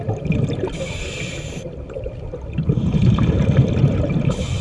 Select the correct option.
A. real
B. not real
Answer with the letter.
B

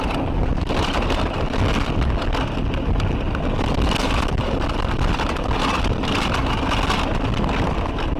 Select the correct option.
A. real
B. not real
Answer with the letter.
A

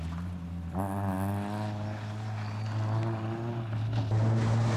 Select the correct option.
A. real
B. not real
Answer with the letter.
A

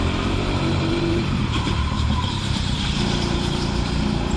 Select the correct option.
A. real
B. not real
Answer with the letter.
B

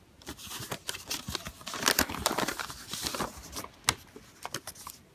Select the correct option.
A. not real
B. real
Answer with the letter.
B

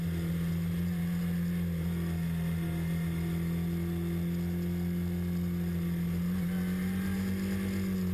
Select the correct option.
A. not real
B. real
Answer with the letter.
B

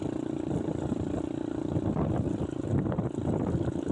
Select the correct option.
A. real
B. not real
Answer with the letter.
A